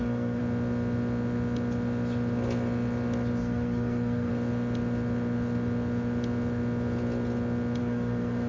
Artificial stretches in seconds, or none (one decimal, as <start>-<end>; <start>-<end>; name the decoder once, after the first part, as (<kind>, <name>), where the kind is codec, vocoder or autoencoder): 0.0-0.4 (codec, SNAC); 3.4-4.3; 7.8-8.5